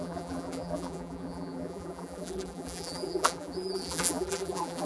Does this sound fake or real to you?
fake